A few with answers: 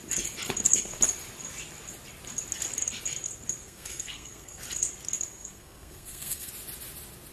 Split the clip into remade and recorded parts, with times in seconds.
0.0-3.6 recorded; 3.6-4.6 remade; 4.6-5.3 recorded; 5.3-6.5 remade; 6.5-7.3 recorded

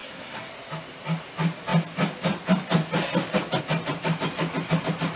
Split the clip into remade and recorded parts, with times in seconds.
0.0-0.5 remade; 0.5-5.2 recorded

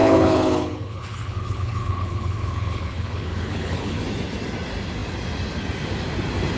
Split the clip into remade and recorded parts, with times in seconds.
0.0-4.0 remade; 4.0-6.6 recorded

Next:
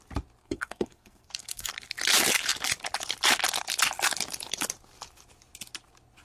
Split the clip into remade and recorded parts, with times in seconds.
0.0-0.4 recorded; 0.4-1.7 remade; 1.7-6.2 recorded